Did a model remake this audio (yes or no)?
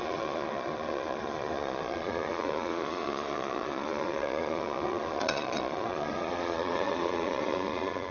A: yes